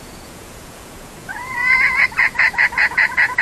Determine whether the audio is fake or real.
fake